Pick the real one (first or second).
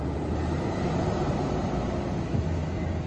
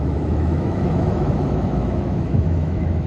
first